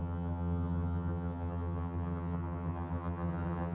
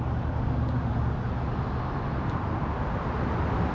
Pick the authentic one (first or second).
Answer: second